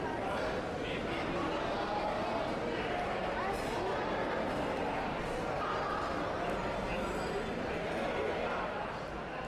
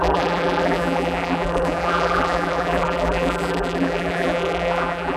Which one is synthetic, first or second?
second